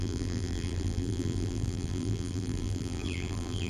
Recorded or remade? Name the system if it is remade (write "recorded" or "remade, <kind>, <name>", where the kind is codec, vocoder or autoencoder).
remade, vocoder, BigVGAN v2